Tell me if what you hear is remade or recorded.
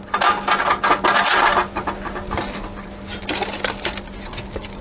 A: recorded